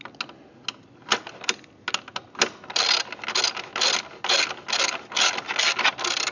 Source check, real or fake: real